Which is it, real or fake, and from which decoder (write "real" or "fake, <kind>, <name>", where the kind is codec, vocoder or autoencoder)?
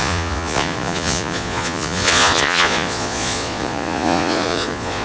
fake, vocoder, Vocos